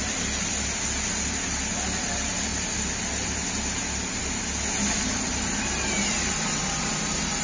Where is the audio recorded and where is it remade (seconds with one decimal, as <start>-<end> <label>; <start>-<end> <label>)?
0.0-7.4 recorded